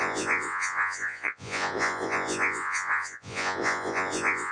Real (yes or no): no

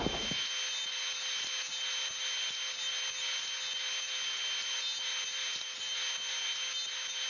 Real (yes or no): yes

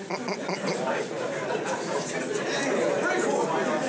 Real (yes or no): yes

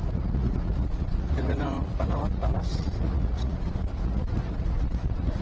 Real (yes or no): no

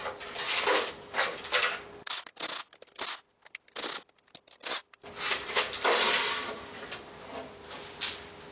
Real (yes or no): yes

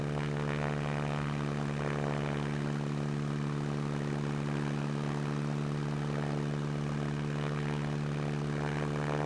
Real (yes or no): yes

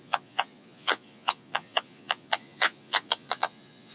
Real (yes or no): no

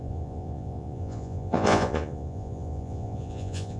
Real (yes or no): no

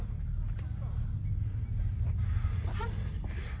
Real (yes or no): yes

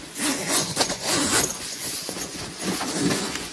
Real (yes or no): no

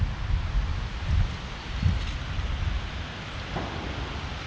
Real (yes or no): yes